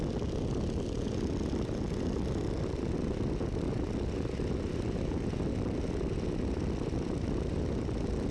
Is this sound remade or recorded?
recorded